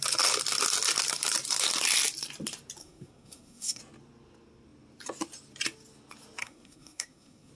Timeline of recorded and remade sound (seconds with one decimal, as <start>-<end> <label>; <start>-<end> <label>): 0.0-2.8 recorded; 2.8-3.8 remade; 3.8-6.4 recorded; 6.4-7.5 remade